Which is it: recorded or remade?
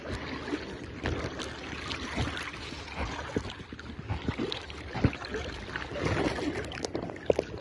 recorded